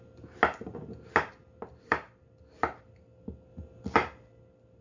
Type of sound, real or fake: real